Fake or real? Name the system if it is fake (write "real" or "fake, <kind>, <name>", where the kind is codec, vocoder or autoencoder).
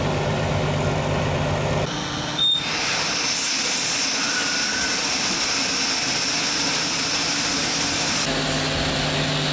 real